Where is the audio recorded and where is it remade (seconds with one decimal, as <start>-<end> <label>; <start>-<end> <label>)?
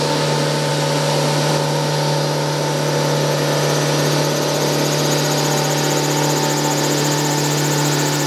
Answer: 0.0-8.3 recorded